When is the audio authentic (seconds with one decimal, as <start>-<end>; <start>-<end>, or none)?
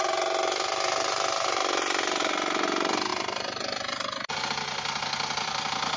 0.0-1.6; 2.2-3.1; 4.3-6.0